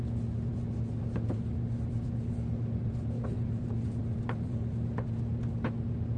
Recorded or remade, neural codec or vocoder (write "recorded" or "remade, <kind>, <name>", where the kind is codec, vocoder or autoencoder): recorded